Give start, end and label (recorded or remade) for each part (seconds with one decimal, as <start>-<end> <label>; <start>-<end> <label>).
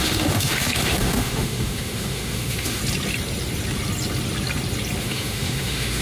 0.0-2.8 remade; 2.8-5.0 recorded; 5.0-6.0 remade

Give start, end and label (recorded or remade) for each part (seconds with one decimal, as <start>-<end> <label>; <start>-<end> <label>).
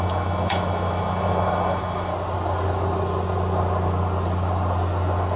0.0-2.1 remade; 2.1-5.4 recorded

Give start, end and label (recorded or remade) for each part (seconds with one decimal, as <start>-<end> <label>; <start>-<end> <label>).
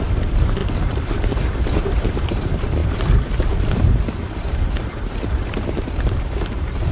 0.0-0.6 remade; 0.6-1.1 recorded; 1.1-6.9 remade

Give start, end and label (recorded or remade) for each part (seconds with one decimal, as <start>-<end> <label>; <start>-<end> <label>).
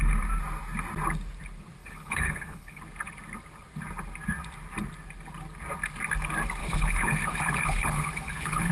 0.0-1.8 recorded; 1.8-2.8 remade; 2.8-6.6 recorded; 6.6-8.7 remade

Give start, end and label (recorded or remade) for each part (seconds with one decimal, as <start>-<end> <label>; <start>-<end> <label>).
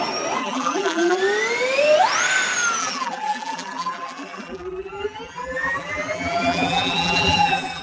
0.0-0.4 recorded; 0.4-1.2 remade; 1.2-2.8 recorded; 2.8-7.8 remade